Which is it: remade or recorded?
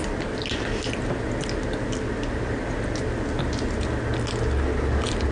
recorded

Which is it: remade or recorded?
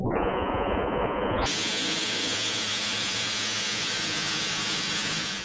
remade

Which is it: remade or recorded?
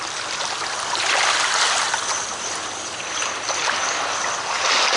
recorded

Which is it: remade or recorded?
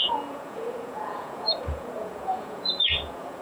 remade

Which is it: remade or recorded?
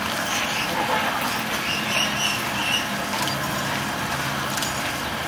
recorded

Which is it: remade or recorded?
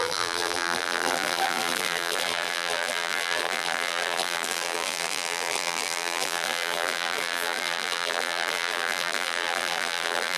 remade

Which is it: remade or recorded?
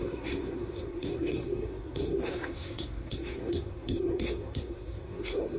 remade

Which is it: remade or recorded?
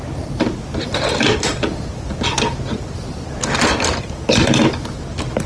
recorded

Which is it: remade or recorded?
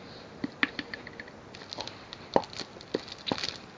recorded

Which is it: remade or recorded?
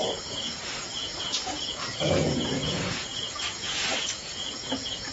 remade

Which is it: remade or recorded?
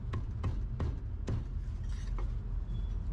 recorded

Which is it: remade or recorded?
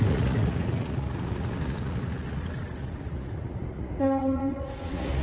remade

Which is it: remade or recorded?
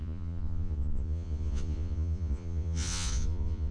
remade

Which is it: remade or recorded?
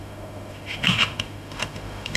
remade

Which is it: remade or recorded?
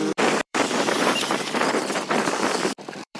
remade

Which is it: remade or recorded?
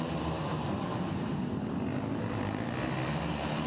recorded